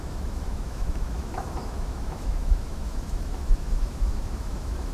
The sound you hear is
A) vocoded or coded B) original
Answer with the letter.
A